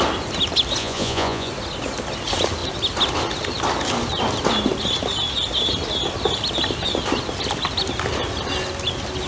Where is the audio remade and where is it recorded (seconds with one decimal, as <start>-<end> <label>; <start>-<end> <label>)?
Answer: 0.0-0.8 recorded; 0.8-1.5 remade; 1.5-9.3 recorded